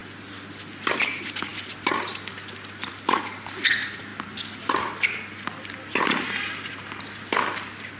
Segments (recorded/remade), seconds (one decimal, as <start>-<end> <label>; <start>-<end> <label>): 0.0-8.0 recorded